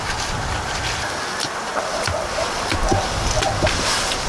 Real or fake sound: fake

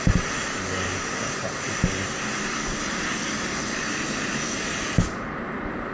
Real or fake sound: real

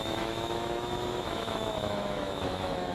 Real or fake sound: fake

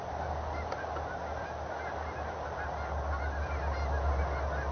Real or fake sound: real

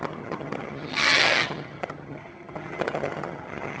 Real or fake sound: fake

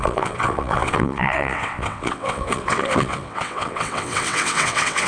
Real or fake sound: fake